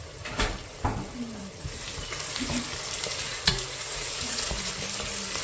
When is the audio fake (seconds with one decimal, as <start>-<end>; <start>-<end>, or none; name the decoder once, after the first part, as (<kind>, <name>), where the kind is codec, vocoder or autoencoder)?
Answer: 3.2-4.7 (vocoder, Vocos)